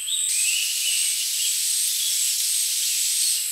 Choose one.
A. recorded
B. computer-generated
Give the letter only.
A